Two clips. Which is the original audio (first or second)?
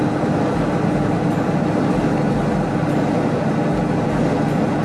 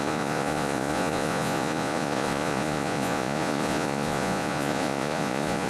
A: first